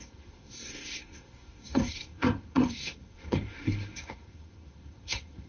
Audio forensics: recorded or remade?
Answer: remade